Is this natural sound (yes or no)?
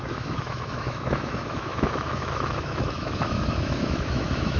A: no